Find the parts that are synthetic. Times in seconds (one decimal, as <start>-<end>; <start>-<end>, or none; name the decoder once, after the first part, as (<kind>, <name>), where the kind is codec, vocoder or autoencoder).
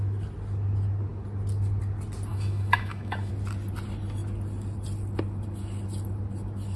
2.3-3.3 (autoencoder, DAC-VAE)